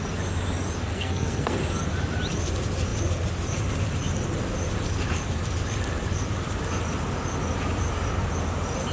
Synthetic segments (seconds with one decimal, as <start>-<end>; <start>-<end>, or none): 0.9-1.6